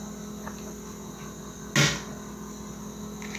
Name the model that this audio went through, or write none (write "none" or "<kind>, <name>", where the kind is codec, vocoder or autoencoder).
none